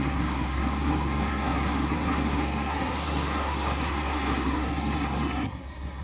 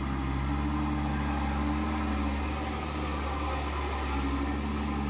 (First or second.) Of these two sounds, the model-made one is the first